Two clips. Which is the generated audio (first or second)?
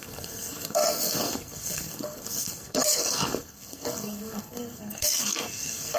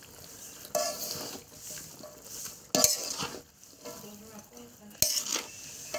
first